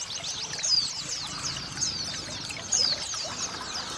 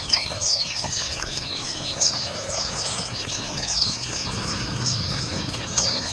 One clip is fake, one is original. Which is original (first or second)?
first